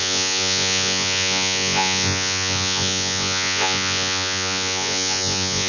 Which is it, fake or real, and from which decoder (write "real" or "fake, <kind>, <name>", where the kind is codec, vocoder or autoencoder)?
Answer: fake, vocoder, Vocos